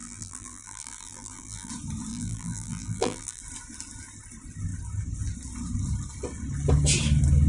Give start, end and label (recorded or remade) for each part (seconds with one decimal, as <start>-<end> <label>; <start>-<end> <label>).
0.0-1.7 remade; 1.7-2.1 recorded; 2.1-3.4 remade; 3.4-7.5 recorded